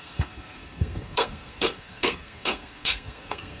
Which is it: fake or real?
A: fake